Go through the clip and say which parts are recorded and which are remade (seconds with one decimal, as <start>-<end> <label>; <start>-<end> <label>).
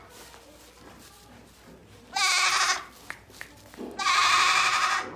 0.0-5.2 recorded